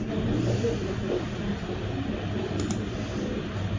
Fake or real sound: real